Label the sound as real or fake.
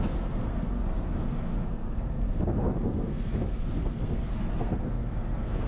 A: fake